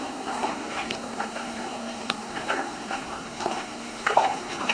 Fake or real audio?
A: fake